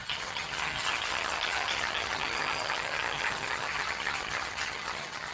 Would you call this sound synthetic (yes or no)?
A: yes